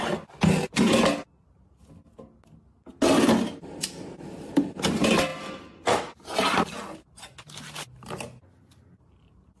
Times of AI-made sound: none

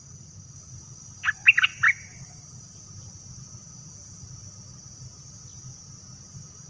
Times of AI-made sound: none

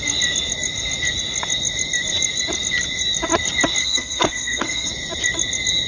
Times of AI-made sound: 3.8-4.9

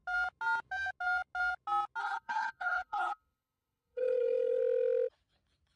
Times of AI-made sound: 2.0-4.6

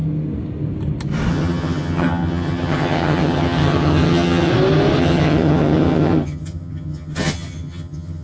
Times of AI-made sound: 1.3-4.5; 5.0-8.2

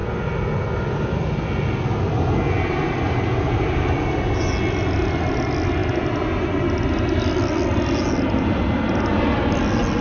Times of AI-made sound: none

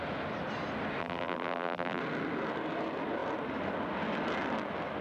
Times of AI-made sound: 1.0-2.0